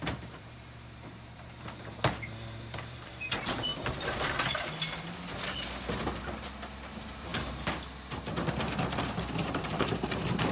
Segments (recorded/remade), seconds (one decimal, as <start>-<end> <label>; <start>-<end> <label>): 0.0-3.7 remade; 3.7-6.2 recorded; 6.2-7.3 remade; 7.3-8.9 recorded; 8.9-10.5 remade